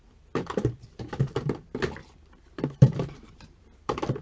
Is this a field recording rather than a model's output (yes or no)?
no